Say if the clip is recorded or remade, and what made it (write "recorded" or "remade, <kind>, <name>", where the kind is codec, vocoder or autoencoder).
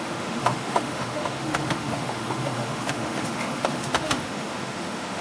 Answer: remade, autoencoder, DAC-VAE